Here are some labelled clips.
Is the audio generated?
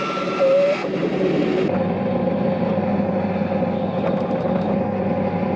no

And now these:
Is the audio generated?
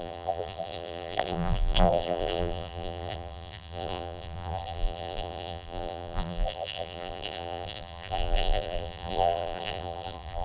yes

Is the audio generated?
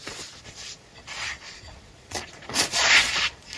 yes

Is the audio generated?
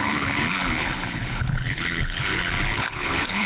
yes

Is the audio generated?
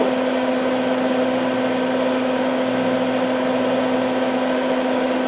no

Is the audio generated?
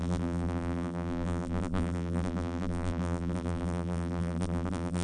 yes